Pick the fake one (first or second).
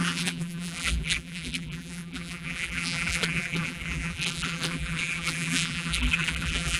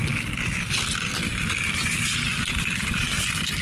first